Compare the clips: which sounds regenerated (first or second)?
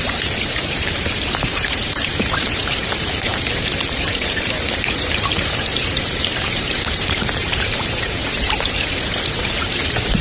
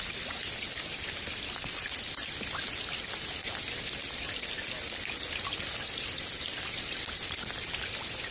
first